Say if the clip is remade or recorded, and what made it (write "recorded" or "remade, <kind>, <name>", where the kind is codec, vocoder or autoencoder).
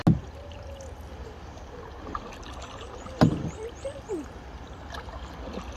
recorded